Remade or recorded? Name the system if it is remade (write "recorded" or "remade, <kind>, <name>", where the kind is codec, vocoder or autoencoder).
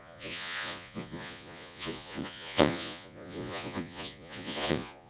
remade, vocoder, Vocos